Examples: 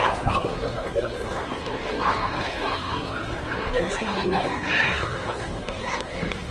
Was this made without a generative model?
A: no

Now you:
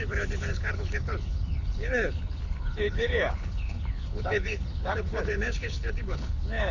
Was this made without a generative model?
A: no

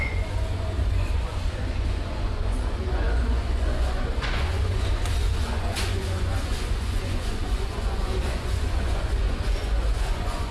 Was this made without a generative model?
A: no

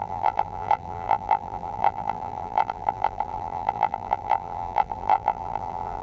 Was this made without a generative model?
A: no